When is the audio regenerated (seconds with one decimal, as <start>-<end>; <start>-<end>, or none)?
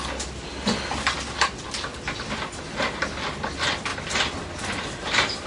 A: 3.9-5.5